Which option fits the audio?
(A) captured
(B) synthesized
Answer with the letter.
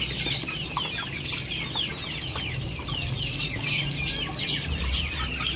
A